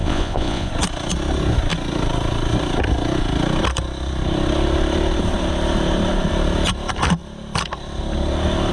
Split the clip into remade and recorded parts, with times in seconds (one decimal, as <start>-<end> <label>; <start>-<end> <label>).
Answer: 0.0-0.7 remade; 0.7-8.7 recorded

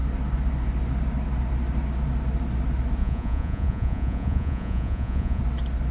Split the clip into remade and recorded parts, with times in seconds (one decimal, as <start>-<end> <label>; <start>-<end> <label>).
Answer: 0.0-3.0 recorded; 3.0-5.4 remade; 5.4-5.9 recorded

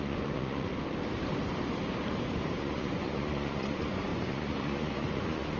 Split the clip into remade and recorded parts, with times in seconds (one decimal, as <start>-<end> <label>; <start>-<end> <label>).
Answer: 0.0-0.7 remade; 0.7-2.6 recorded; 2.6-5.6 remade

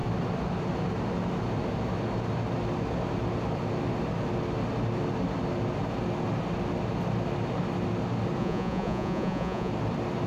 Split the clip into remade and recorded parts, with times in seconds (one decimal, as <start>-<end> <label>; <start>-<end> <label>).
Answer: 0.0-8.4 recorded; 8.4-9.7 remade; 9.7-10.3 recorded